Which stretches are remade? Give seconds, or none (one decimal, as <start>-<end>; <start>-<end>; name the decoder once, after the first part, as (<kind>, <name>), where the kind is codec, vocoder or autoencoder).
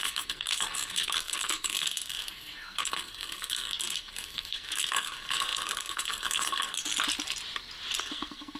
0.0-6.9 (codec, SNAC); 8.0-8.6